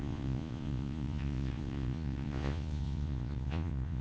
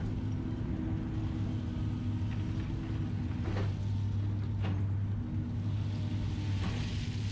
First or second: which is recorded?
second